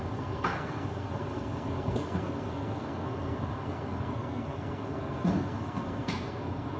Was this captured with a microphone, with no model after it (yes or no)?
no